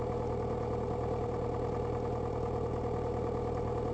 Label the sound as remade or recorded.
recorded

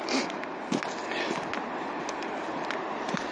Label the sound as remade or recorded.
recorded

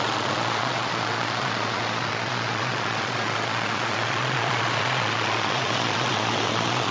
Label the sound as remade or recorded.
remade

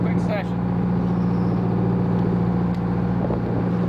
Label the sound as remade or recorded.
recorded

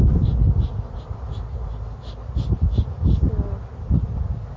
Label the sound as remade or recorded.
recorded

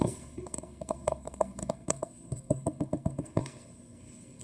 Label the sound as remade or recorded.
remade